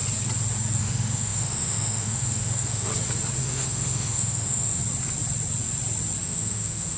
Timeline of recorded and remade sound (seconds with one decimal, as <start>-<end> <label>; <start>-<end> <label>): 0.0-0.8 recorded; 0.8-2.9 remade; 2.9-3.4 recorded; 3.4-4.8 remade; 4.8-6.2 recorded; 6.2-7.0 remade